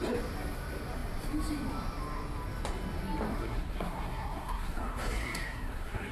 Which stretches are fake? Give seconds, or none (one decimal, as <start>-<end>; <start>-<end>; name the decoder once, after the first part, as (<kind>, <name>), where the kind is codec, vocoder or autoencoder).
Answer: 3.3-6.1 (codec, SNAC)